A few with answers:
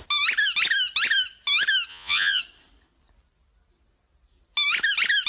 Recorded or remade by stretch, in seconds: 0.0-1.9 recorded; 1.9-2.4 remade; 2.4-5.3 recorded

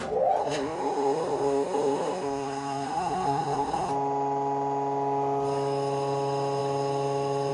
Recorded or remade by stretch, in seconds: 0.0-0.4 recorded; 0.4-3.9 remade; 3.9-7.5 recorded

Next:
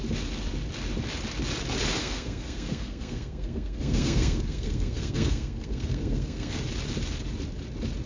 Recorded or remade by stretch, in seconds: 0.0-2.0 recorded; 2.0-6.6 remade; 6.6-8.1 recorded

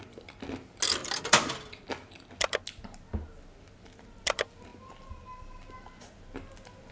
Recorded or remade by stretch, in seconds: 0.0-1.0 recorded; 1.0-1.5 remade; 1.5-6.9 recorded

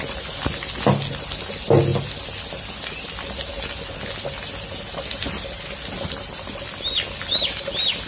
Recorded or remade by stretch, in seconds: 0.0-8.1 recorded

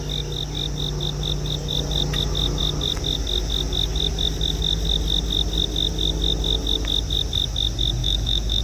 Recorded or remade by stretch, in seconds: 0.0-8.0 recorded; 8.0-8.6 remade